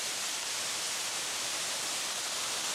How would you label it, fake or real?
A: fake